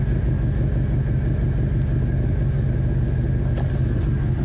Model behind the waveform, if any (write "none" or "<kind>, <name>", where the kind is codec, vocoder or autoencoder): none